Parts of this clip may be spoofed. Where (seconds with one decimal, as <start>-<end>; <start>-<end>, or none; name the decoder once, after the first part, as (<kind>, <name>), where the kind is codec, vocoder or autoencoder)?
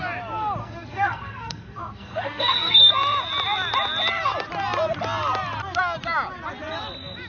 0.6-2.9 (codec, SNAC)